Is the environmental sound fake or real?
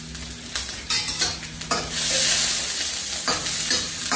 real